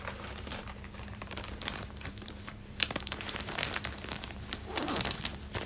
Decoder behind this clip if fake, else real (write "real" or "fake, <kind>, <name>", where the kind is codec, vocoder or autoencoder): fake, vocoder, BigVGAN v2